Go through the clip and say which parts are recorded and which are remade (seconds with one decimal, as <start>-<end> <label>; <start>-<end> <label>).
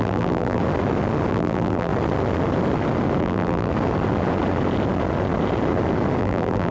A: 0.0-0.6 remade; 0.6-1.3 recorded; 1.3-1.9 remade; 1.9-3.2 recorded; 3.2-3.7 remade; 3.7-6.2 recorded; 6.2-6.7 remade